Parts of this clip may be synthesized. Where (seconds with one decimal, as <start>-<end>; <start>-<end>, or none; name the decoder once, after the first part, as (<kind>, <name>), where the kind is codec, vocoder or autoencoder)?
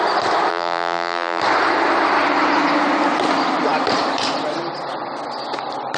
0.5-1.4 (vocoder, BigVGAN v2)